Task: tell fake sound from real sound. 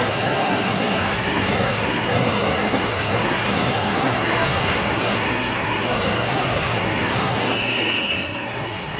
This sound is fake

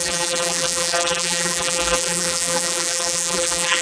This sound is fake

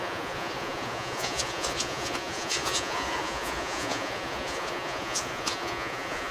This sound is fake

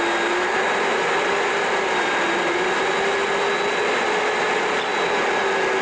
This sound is real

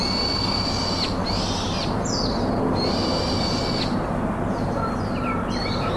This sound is real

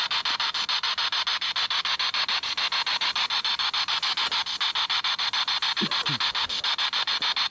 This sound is real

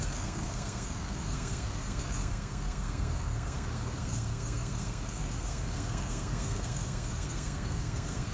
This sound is fake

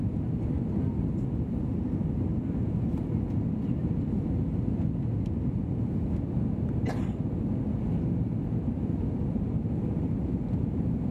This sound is real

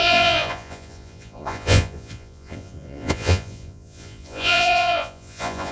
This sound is fake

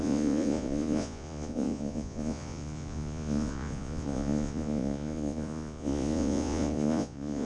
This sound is fake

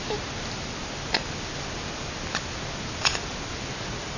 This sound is real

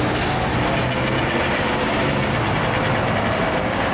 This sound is real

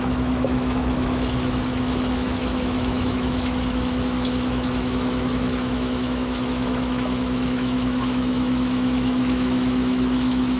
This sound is fake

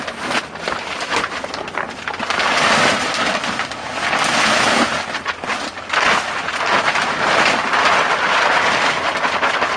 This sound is real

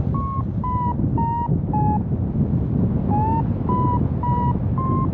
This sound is real